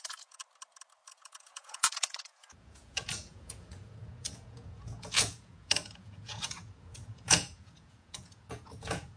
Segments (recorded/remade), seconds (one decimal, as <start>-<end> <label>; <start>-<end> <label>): 0.0-0.4 remade; 0.4-1.1 recorded; 1.1-9.2 remade